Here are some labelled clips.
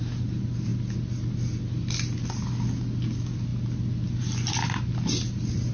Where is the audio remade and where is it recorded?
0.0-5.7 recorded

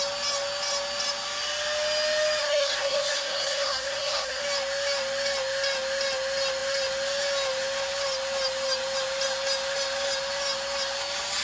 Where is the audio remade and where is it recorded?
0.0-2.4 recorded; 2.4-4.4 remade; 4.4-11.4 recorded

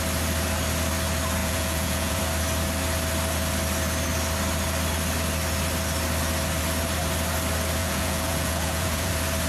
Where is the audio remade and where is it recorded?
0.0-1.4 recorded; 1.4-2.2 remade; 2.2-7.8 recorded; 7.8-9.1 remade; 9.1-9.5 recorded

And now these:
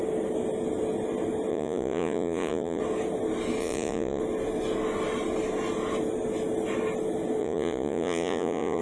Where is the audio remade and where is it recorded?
0.0-1.5 recorded; 1.5-2.8 remade; 2.8-3.6 recorded; 3.6-4.2 remade; 4.2-7.4 recorded; 7.4-8.8 remade

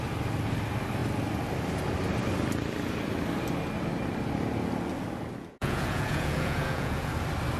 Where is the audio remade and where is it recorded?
0.0-5.4 recorded; 5.4-7.1 remade; 7.1-7.6 recorded